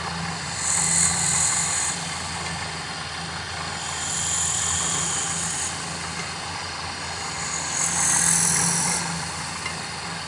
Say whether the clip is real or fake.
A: real